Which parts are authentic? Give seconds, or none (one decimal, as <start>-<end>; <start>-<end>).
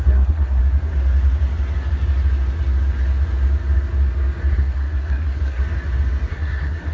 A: 0.6-4.5; 5.6-6.3